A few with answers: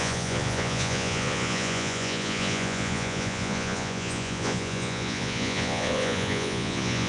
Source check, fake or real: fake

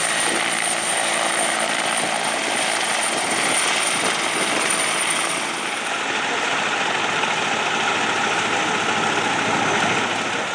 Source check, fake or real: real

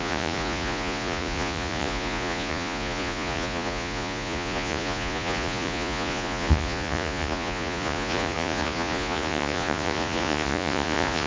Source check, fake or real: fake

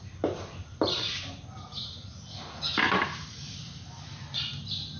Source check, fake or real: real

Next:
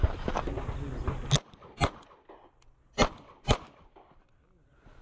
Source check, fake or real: real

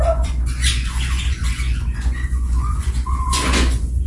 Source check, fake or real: fake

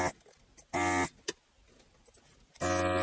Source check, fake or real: real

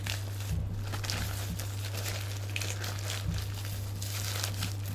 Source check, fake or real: real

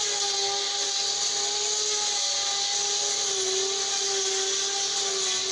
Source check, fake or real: real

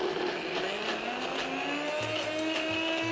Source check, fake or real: real